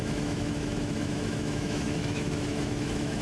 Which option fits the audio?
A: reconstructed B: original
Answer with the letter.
A